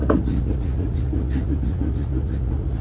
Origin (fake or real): fake